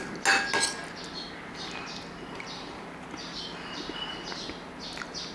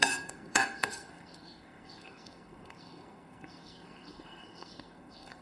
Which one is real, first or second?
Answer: first